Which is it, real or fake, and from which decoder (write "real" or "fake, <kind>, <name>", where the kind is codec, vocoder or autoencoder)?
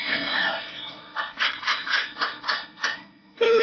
fake, codec, SNAC